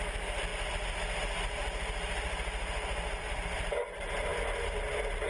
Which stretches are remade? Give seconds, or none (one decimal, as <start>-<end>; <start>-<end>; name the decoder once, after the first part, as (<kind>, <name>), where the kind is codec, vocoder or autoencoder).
none